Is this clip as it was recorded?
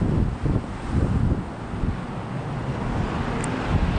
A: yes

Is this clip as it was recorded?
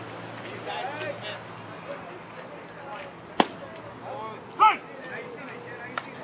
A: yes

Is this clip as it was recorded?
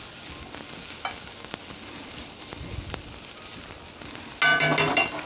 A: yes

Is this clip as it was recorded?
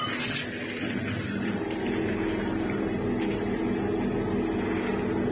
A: yes